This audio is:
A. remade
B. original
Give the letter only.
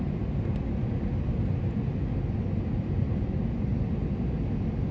B